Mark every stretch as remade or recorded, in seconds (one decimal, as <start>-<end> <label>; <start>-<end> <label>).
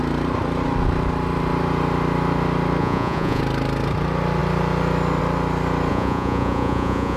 0.0-2.8 recorded; 2.8-3.4 remade; 3.4-5.9 recorded; 5.9-7.2 remade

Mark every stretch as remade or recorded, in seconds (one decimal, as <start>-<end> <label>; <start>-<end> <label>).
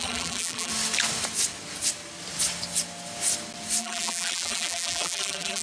0.0-0.7 remade; 0.7-3.8 recorded; 3.8-5.6 remade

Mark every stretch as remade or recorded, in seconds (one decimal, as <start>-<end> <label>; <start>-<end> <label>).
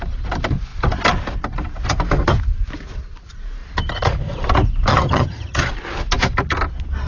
0.0-4.9 recorded; 4.9-5.7 remade; 5.7-7.1 recorded